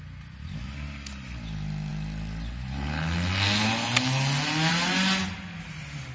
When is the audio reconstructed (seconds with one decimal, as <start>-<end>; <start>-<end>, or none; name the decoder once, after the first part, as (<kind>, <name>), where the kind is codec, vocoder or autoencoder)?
none